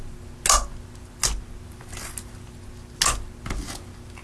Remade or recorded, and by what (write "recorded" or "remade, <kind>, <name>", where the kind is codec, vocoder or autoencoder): recorded